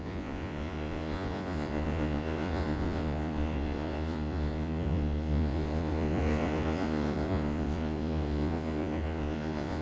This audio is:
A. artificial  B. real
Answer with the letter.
A